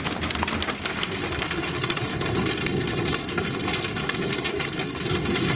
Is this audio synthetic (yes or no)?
no